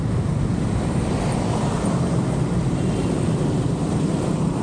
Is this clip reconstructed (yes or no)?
yes